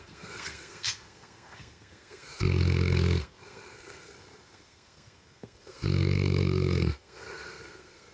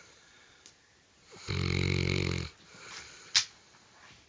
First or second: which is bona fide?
second